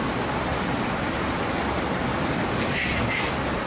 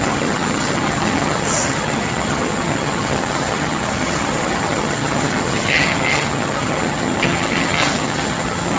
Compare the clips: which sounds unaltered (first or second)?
first